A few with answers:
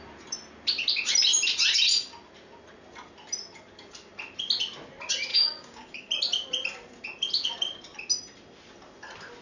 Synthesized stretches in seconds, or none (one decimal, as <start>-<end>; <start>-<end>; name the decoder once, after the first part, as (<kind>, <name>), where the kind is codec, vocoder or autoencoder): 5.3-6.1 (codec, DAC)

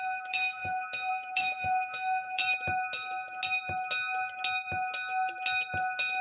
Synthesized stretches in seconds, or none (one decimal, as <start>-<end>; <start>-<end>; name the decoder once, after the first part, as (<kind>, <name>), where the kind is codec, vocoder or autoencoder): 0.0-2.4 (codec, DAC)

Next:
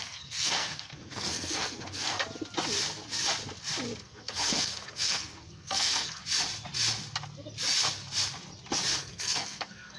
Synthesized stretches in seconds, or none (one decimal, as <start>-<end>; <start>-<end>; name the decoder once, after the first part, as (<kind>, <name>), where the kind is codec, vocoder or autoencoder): 0.0-2.2 (codec, SNAC); 4.0-6.2; 9.0-10.0

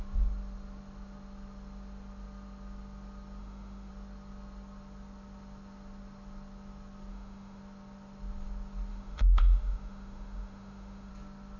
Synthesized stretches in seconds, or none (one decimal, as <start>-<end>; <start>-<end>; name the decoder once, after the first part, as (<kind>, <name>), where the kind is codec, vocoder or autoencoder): 3.4-3.9 (autoencoder, DAC-VAE); 7.1-7.6; 8.9-11.1